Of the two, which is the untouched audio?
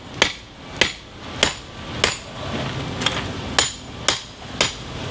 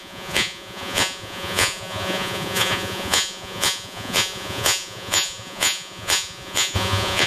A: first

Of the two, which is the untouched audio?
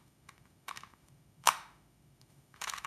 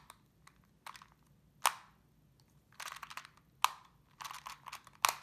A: second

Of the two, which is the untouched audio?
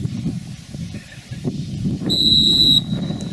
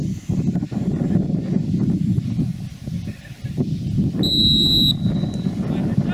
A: second